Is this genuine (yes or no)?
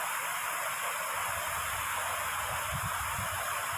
yes